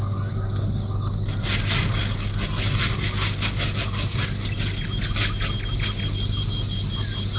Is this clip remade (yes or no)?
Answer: no